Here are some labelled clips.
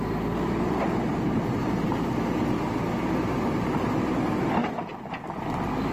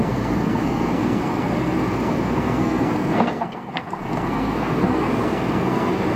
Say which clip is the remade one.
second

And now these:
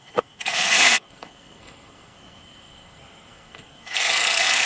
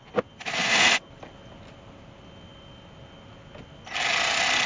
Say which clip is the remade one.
first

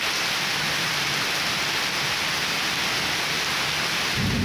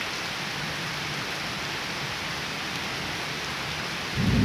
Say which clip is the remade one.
second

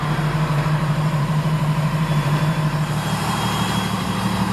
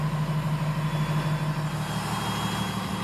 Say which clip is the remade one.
first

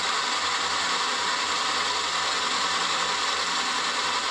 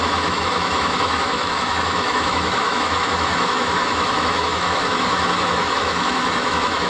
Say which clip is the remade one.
second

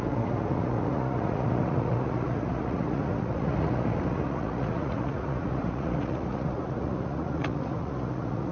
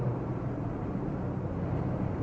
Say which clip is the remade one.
first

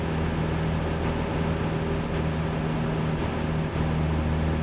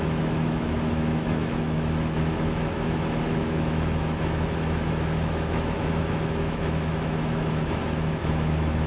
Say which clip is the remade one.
second